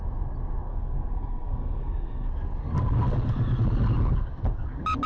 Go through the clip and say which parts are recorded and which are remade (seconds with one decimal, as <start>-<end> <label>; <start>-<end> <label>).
0.0-0.7 recorded; 0.7-2.3 remade; 2.3-5.1 recorded